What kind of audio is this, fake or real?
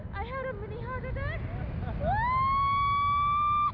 real